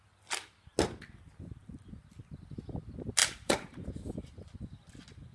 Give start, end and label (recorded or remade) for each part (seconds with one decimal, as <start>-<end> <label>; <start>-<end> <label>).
0.0-3.2 recorded; 3.2-3.8 remade; 3.8-5.3 recorded